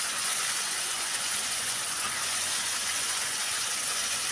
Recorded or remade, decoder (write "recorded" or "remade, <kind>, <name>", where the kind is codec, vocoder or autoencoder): remade, vocoder, Vocos